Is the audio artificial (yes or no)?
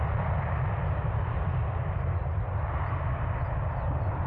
no